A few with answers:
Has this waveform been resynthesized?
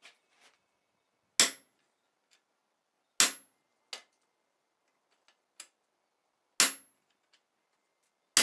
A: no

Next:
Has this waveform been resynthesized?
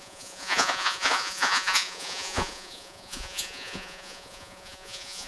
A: yes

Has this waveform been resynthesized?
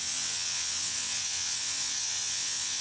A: yes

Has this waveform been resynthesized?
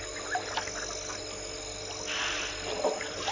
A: no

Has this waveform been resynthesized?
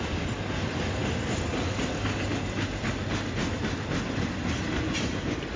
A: no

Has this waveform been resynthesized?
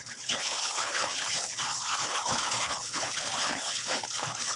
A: yes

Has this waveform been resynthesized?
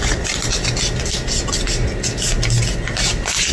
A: no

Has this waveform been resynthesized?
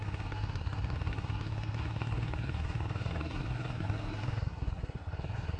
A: yes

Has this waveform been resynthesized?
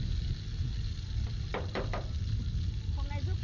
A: no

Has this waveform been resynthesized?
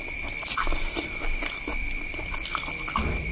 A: no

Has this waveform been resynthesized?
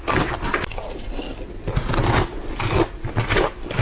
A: no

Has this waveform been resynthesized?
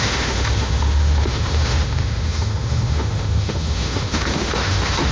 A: yes